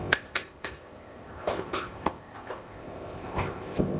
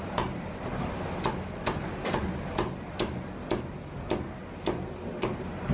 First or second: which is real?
second